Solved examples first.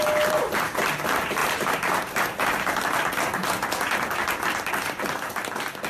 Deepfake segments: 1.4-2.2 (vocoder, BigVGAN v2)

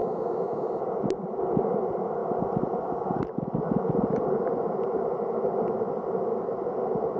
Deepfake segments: 0.0-0.8 (autoencoder, DAC-VAE)

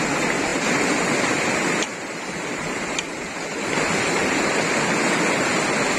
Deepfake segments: none

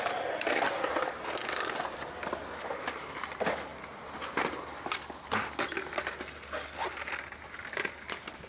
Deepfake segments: none

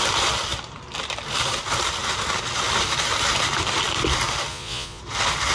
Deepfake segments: 4.5-5.0 (vocoder, Vocos)